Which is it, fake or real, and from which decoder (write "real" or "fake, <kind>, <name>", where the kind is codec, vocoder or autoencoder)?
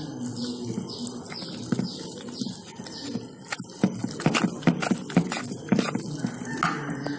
real